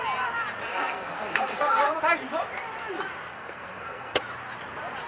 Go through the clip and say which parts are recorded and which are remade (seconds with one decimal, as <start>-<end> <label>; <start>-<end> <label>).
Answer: 0.0-0.7 recorded; 0.7-2.0 remade; 2.0-3.3 recorded; 3.3-4.2 remade; 4.2-5.1 recorded